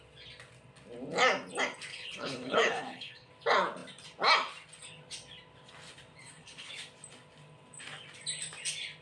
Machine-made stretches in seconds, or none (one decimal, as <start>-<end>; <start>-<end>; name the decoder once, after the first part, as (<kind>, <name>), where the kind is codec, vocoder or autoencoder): 1.9-3.3 (codec, HILCodec); 6.2-6.7

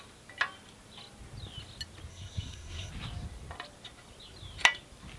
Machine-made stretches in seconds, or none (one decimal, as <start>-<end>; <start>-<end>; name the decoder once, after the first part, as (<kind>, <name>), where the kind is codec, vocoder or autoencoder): 2.1-2.9 (codec, SNAC)